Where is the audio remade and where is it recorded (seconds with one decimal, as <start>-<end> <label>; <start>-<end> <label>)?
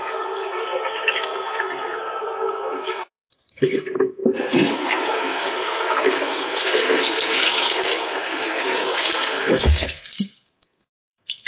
0.0-11.5 remade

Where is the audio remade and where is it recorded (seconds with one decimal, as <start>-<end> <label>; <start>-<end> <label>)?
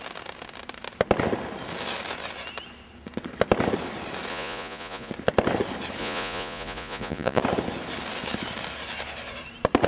0.0-4.3 recorded; 4.3-5.1 remade; 5.1-6.0 recorded; 6.0-7.4 remade; 7.4-9.9 recorded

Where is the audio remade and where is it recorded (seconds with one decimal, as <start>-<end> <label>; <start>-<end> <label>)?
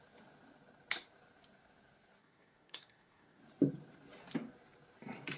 0.0-2.2 recorded; 2.2-3.4 remade; 3.4-5.4 recorded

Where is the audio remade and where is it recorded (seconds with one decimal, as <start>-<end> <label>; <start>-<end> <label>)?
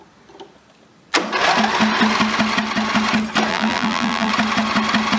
0.0-3.5 recorded; 3.5-4.3 remade; 4.3-5.2 recorded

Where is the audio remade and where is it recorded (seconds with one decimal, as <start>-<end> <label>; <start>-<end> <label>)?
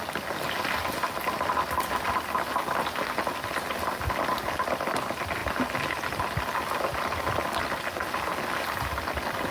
0.0-9.5 recorded